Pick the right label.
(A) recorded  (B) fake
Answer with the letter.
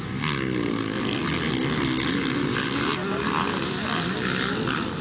A